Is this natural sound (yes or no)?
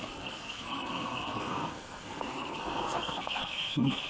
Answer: no